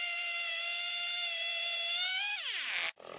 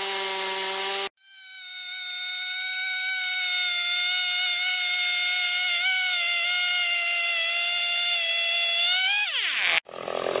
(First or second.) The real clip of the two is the second